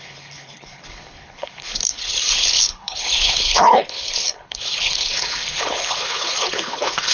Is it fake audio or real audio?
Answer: fake